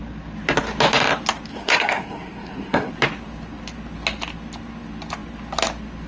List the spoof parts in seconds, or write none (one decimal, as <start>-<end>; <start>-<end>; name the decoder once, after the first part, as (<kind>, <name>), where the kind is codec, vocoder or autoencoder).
1.5-2.9 (codec, SNAC)